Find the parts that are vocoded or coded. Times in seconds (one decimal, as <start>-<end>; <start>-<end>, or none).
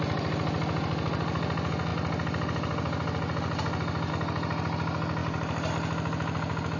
none